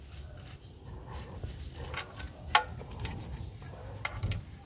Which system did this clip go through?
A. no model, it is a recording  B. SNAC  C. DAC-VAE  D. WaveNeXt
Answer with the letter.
A